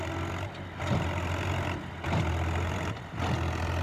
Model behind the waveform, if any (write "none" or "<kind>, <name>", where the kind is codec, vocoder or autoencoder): none